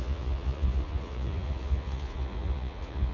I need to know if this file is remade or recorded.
remade